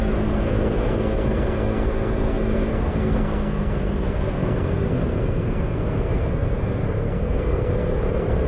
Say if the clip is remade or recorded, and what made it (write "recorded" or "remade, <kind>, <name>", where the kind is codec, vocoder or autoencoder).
remade, codec, SNAC